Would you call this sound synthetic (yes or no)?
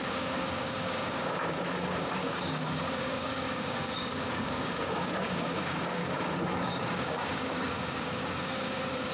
yes